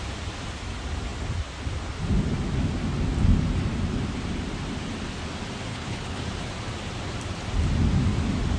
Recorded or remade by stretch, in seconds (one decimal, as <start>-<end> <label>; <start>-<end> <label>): 0.0-5.7 recorded; 5.7-6.2 remade; 6.2-8.6 recorded